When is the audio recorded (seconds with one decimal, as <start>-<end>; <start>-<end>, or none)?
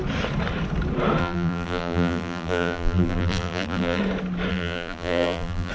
0.0-1.2; 4.0-4.5